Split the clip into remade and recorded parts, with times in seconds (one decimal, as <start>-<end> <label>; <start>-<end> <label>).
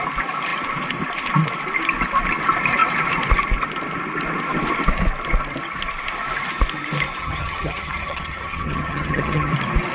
0.0-7.2 recorded; 7.2-9.5 remade; 9.5-9.9 recorded